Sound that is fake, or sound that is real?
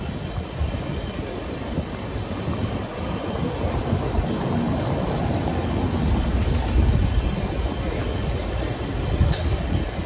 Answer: real